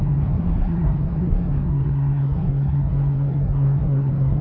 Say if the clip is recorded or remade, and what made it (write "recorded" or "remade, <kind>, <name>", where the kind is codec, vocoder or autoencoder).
remade, codec, SNAC